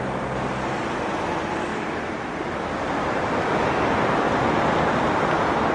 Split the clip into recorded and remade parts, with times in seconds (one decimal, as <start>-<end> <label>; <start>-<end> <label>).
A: 0.0-5.7 recorded